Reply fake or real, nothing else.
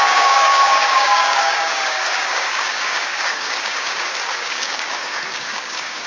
fake